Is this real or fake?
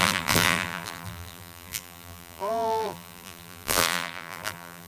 fake